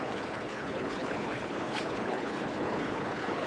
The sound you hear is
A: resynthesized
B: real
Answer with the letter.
A